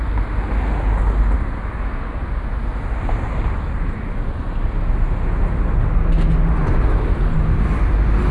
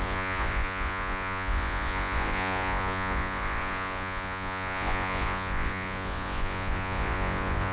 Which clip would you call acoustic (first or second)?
first